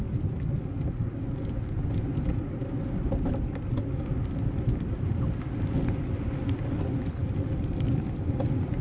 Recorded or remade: recorded